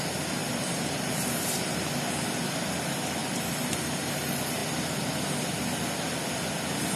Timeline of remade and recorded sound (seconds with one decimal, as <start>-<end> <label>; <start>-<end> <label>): 0.0-0.4 recorded; 0.4-1.4 remade; 1.4-3.2 recorded; 3.2-4.1 remade; 4.1-7.0 recorded